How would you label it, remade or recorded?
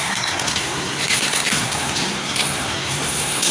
remade